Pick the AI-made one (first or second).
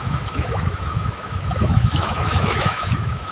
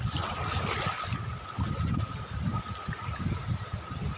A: first